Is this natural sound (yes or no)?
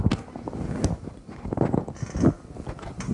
yes